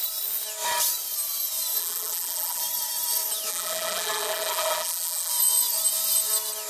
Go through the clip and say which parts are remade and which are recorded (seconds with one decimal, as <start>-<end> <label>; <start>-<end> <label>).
0.0-1.8 recorded; 1.8-2.6 remade; 2.6-3.5 recorded; 3.5-5.3 remade; 5.3-6.7 recorded